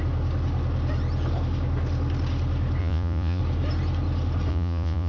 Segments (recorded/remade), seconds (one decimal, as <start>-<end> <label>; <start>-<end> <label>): 0.0-2.8 recorded; 2.8-3.4 remade; 3.4-4.5 recorded; 4.5-5.1 remade